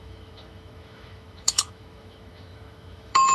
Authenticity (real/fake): fake